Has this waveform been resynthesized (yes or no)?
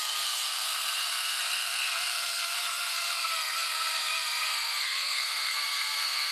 yes